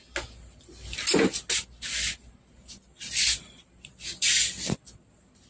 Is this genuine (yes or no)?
yes